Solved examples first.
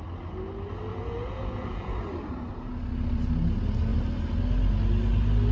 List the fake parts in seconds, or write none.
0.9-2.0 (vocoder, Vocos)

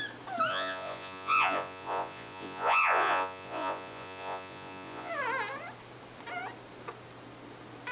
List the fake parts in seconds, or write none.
0.5-5.1 (vocoder, Vocos)

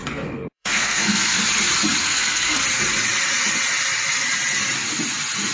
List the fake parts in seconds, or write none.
0.0-1.4 (codec, SNAC); 2.0-2.6

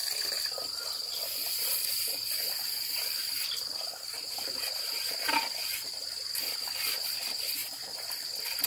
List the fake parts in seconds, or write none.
0.0-1.9 (vocoder, BigVGAN v2); 7.6-8.2

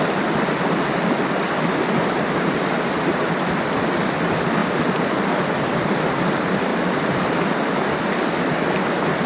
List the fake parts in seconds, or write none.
4.6-5.6 (vocoder, BigVGAN v2); 6.7-7.4

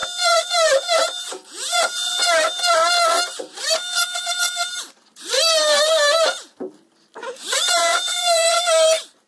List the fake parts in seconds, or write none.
0.0-2.2 (vocoder, Vocos); 7.2-8.6

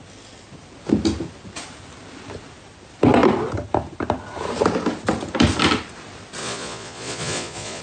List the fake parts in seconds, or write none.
6.4-7.8 (vocoder, Vocos)

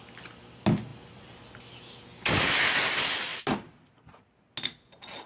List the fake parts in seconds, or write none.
none